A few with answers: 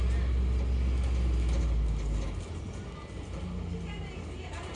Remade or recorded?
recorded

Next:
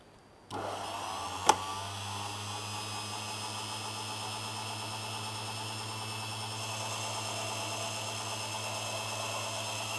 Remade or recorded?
recorded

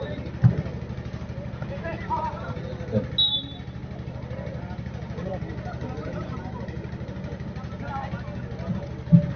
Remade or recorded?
recorded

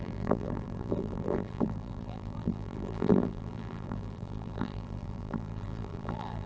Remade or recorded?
remade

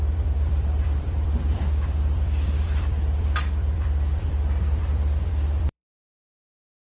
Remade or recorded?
remade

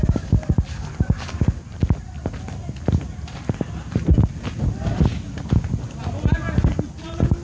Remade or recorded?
recorded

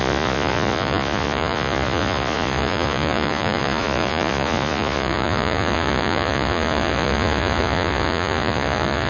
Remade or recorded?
remade